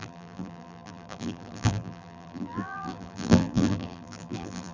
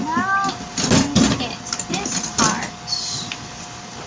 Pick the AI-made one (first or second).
first